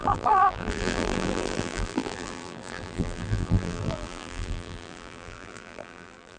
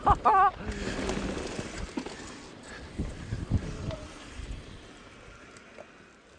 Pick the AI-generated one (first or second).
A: first